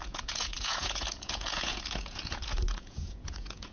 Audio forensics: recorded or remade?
remade